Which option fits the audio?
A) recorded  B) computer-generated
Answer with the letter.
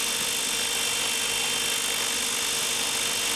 A